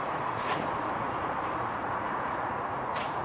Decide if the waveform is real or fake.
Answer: fake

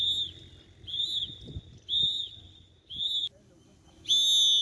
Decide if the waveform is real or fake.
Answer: real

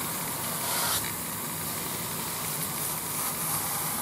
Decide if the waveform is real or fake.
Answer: real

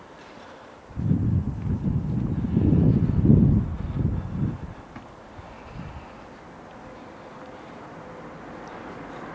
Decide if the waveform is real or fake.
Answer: real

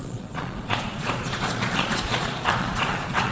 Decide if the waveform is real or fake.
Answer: fake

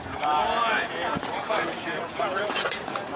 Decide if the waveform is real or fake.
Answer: fake